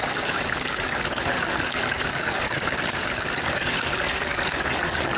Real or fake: fake